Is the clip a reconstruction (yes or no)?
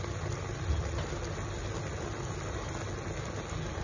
no